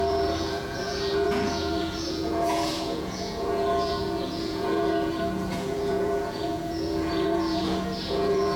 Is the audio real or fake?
fake